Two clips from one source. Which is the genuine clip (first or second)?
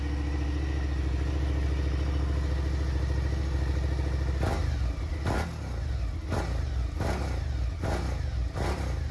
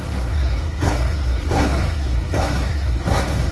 first